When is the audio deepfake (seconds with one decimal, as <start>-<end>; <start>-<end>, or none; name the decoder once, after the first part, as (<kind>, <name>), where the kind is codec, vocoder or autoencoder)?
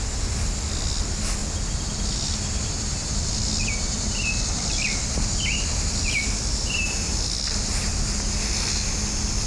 none